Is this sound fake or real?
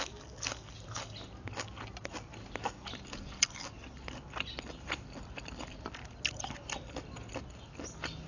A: real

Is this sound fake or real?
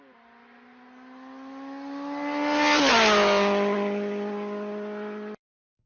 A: real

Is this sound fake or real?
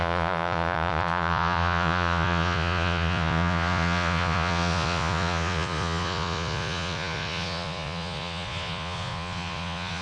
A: fake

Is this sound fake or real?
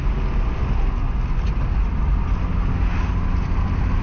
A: real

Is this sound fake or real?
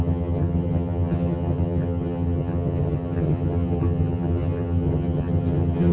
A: fake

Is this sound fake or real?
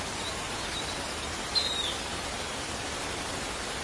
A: real